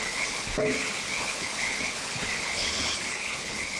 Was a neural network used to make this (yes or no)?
yes